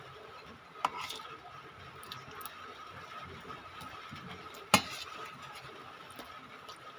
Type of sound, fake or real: real